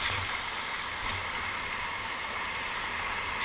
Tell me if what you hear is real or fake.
real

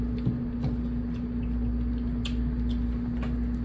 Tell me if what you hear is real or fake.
real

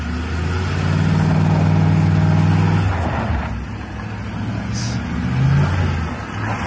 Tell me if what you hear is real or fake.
real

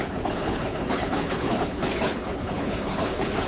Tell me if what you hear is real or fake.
fake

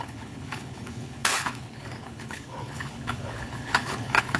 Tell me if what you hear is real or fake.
fake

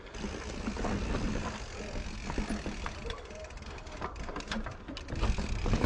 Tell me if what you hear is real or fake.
real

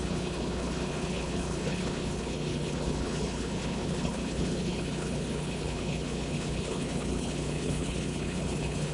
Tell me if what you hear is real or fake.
fake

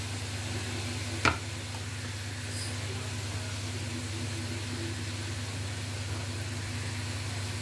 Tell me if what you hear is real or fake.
real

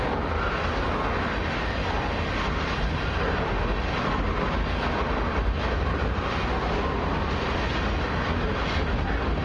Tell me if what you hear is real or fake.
real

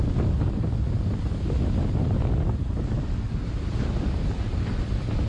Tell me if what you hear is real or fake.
real